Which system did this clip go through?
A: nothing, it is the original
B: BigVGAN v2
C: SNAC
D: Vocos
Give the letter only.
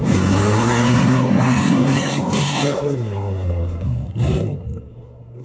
C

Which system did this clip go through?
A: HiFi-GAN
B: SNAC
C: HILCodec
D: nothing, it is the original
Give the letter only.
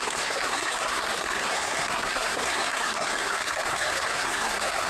B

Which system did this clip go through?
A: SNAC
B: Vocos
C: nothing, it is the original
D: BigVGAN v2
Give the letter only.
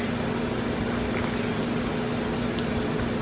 C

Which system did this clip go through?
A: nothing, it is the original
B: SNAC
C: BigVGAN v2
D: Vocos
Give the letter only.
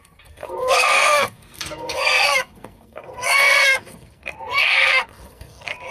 B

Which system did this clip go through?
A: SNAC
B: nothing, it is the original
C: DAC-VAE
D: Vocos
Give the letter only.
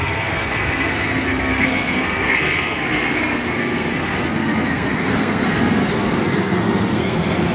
A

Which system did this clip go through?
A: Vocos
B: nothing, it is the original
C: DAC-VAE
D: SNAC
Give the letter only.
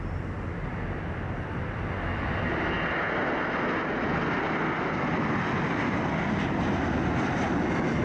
B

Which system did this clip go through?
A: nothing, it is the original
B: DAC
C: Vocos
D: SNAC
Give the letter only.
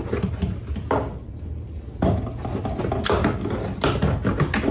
A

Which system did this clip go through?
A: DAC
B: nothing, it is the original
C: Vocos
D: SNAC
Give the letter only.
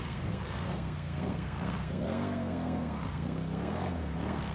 D